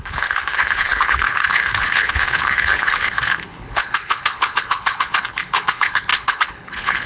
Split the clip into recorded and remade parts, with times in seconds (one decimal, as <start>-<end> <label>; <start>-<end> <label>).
0.0-7.1 remade